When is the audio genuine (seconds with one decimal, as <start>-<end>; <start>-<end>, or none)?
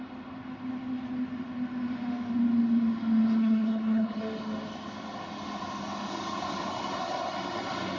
0.0-3.4; 4.2-8.0